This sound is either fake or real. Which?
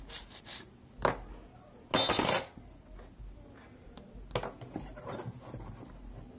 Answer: real